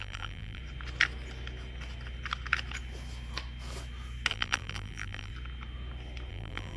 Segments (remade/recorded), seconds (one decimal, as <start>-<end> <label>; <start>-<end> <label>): 0.0-0.6 remade; 0.6-4.3 recorded; 4.3-5.3 remade; 5.3-6.3 recorded; 6.3-6.8 remade